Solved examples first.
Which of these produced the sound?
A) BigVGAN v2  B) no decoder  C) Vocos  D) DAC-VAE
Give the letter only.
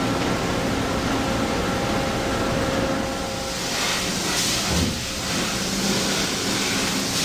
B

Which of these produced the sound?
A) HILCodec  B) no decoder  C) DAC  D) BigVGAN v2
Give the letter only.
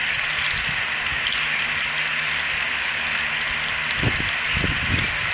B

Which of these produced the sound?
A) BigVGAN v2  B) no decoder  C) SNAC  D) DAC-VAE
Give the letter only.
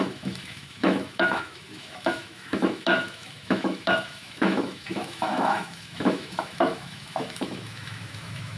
D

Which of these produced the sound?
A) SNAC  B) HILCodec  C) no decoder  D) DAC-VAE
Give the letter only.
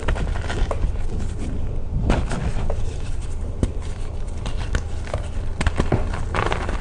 C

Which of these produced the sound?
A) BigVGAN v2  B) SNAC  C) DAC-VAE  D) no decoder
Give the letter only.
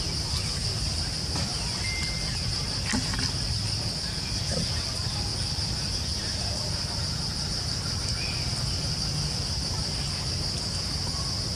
D